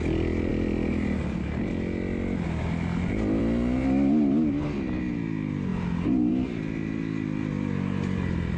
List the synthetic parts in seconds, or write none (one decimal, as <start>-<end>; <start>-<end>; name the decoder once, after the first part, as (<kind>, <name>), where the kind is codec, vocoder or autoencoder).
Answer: none